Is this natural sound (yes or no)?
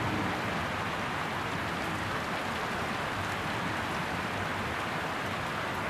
yes